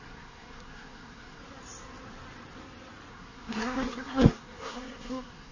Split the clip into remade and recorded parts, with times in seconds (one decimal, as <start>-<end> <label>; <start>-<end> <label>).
0.0-1.4 remade; 1.4-3.1 recorded; 3.1-5.5 remade